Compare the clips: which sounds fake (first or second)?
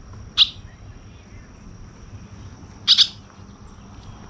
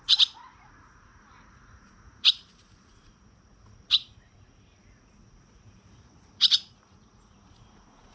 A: second